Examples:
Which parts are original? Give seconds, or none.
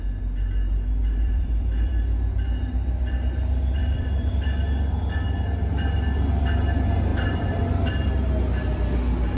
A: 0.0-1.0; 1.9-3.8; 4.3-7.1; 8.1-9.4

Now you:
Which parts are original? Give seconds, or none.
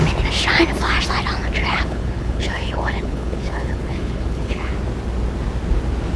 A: 0.0-1.6; 4.7-6.2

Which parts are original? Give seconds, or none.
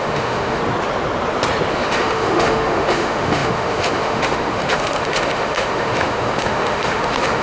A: 0.6-1.7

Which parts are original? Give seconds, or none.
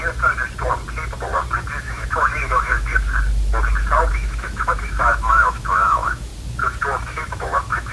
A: 0.0-1.8; 2.9-4.1; 6.3-7.0